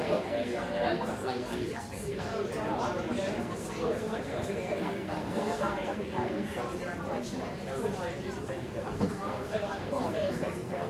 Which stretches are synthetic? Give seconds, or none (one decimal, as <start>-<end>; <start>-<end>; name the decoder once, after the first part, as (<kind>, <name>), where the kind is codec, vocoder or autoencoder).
0.0-2.3 (codec, SNAC); 3.4-6.6; 8.4-10.9